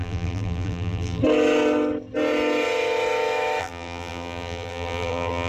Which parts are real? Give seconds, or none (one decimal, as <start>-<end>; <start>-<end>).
1.2-3.6